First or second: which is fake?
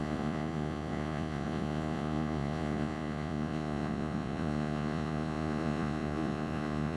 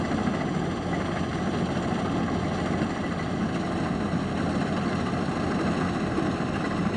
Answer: first